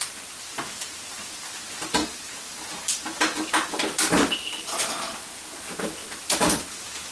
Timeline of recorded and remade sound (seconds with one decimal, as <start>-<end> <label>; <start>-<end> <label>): 0.0-2.0 recorded; 2.0-3.2 remade; 3.2-6.0 recorded; 6.0-7.1 remade